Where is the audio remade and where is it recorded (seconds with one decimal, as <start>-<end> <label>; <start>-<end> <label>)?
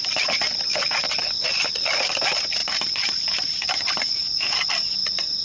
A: 0.0-5.4 recorded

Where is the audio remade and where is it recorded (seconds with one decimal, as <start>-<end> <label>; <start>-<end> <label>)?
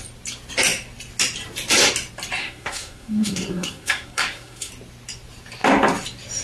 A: 0.0-2.4 recorded; 2.4-4.7 remade; 4.7-6.4 recorded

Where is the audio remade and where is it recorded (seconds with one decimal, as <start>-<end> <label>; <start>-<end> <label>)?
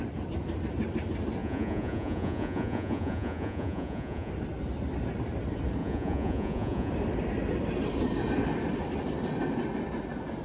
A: 0.0-1.4 recorded; 1.4-4.3 remade; 4.3-5.8 recorded; 5.8-6.9 remade; 6.9-10.4 recorded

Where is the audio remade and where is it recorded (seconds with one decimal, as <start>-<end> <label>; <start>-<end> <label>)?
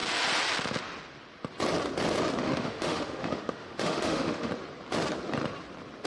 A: 0.0-2.4 recorded; 2.4-4.5 remade; 4.5-6.1 recorded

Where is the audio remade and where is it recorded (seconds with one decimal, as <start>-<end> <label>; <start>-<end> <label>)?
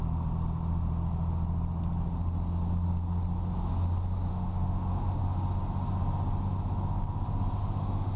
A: 0.0-4.3 recorded; 4.3-5.2 remade; 5.2-7.6 recorded; 7.6-8.2 remade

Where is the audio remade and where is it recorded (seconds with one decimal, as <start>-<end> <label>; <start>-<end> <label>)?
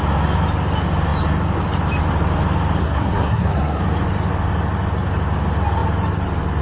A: 0.0-2.8 recorded; 2.8-3.8 remade; 3.8-6.6 recorded